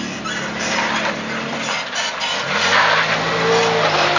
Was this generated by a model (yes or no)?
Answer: no